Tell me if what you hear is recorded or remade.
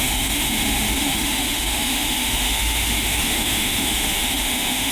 remade